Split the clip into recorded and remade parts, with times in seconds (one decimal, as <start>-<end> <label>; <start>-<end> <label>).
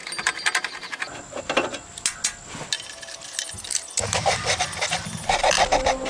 0.0-3.7 recorded; 3.7-4.6 remade; 4.6-6.1 recorded